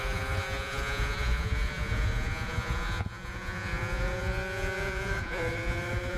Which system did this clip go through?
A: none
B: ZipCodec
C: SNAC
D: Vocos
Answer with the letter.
D